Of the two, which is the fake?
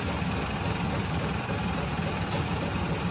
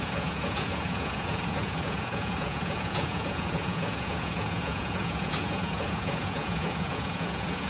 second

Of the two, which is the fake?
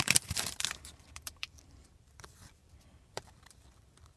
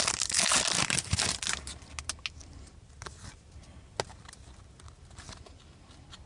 first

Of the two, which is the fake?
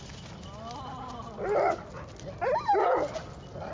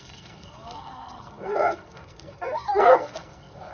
second